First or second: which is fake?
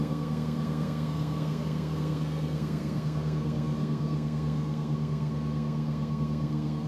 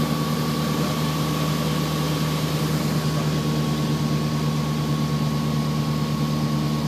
first